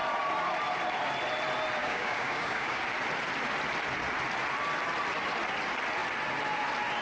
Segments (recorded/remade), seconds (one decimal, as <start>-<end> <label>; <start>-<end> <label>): 0.0-1.8 recorded; 1.8-2.8 remade; 2.8-7.0 recorded

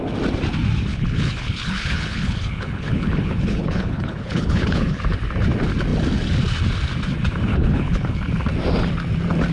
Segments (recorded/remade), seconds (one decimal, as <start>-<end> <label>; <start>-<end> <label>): 0.0-0.9 recorded; 0.9-5.0 remade; 5.0-7.5 recorded; 7.5-8.3 remade; 8.3-9.5 recorded